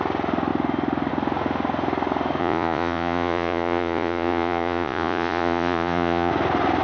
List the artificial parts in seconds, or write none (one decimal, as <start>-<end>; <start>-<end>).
2.4-6.3